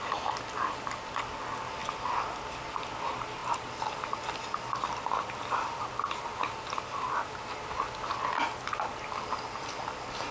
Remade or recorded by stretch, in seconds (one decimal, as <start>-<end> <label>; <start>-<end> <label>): 0.0-10.3 recorded